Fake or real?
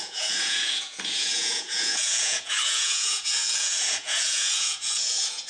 fake